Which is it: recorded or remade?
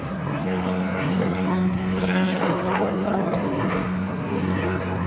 remade